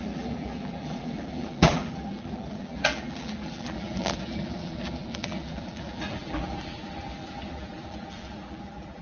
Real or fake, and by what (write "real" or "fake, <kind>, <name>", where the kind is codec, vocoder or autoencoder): fake, vocoder, BigVGAN v2